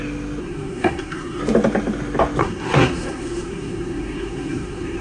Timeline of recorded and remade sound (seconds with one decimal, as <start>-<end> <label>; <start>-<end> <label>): 0.0-0.4 recorded; 0.4-1.4 remade; 1.4-2.4 recorded; 2.4-5.0 remade